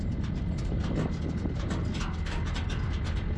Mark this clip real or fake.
real